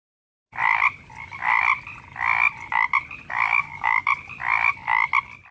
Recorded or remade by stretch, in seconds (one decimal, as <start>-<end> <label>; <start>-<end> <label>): 0.0-3.3 recorded; 3.3-4.1 remade; 4.1-5.5 recorded